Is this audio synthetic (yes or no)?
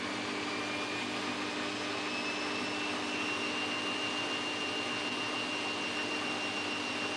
no